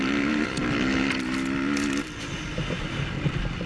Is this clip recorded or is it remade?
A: recorded